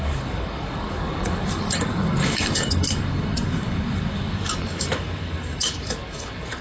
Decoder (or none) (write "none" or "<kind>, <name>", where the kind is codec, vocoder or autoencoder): codec, DAC